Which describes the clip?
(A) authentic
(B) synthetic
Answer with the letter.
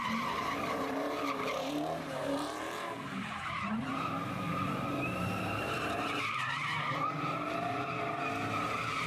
B